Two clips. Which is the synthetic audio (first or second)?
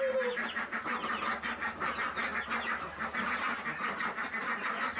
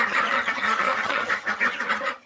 second